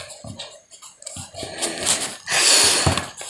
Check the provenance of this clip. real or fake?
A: real